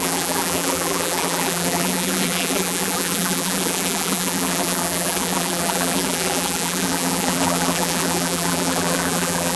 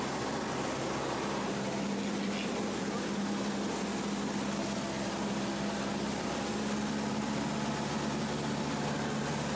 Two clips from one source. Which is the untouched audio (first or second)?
second